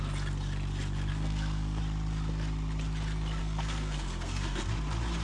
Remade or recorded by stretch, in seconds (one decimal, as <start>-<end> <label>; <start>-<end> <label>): 0.0-1.1 recorded; 1.1-1.8 remade; 1.8-3.4 recorded; 3.4-4.7 remade; 4.7-5.2 recorded